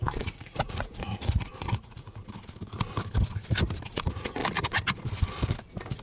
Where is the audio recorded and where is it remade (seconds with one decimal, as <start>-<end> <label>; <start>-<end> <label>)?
0.0-2.2 remade; 2.2-3.9 recorded; 3.9-4.4 remade; 4.4-6.0 recorded